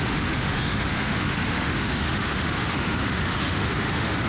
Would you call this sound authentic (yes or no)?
no